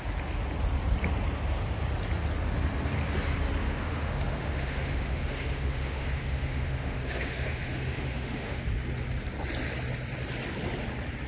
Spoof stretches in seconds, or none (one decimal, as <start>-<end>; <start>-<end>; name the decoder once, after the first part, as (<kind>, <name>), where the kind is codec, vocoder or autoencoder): 3.6-8.6 (autoencoder, DAC-VAE)